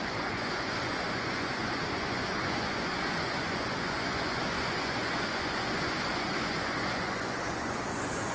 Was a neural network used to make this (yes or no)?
yes